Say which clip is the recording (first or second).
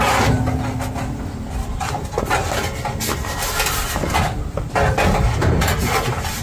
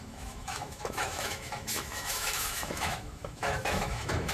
first